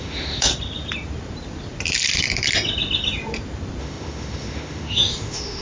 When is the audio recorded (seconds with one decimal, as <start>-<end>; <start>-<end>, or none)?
0.5-3.8